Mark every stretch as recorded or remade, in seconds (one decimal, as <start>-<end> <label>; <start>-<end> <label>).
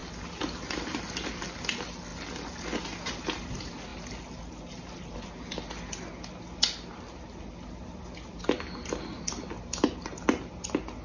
0.0-11.0 recorded